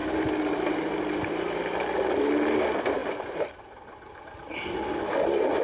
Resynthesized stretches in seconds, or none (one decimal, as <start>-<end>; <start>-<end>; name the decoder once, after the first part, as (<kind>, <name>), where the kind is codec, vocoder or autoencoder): none